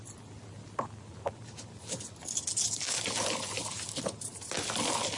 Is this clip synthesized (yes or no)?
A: no